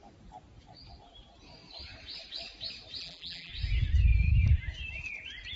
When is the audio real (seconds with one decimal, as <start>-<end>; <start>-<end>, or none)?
0.0-3.0; 3.5-5.6